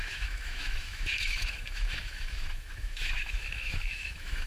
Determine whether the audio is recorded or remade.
remade